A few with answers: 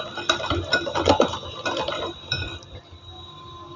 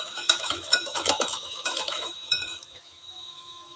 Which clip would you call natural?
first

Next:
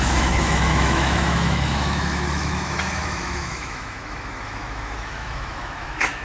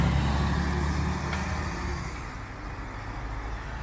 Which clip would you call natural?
second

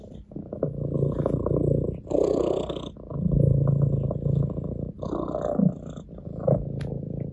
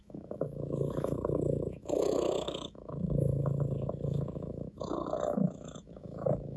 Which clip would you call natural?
first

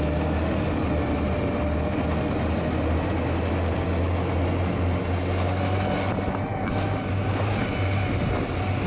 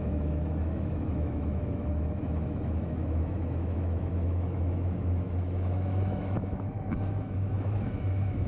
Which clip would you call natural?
first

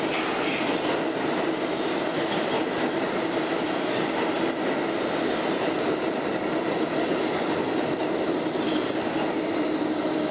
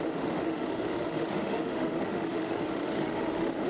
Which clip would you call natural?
first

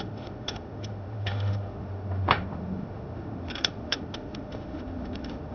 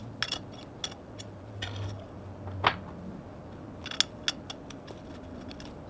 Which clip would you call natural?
second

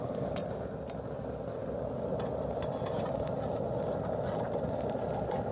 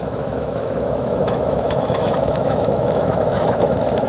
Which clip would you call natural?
first